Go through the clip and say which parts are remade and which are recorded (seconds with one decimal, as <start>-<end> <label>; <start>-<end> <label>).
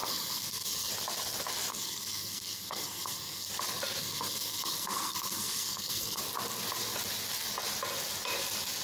0.0-0.9 remade; 0.9-1.7 recorded; 1.7-3.5 remade; 3.5-4.0 recorded; 4.0-6.2 remade; 6.2-8.8 recorded